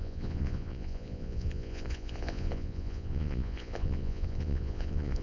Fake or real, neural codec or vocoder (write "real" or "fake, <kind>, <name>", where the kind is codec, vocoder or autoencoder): fake, vocoder, Vocos